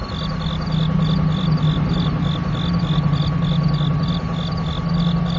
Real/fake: real